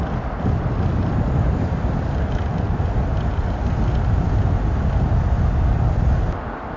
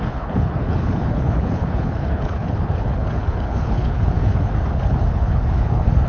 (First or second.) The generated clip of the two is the second